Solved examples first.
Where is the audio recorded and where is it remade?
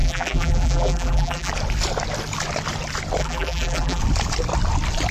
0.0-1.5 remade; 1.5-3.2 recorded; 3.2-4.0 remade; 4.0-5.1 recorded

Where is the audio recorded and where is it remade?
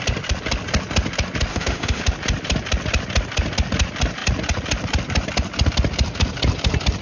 0.0-1.5 recorded; 1.5-2.0 remade; 2.0-7.0 recorded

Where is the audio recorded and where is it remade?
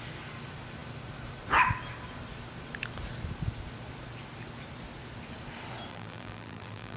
0.0-5.9 recorded; 5.9-7.0 remade